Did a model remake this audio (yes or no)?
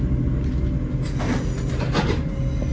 no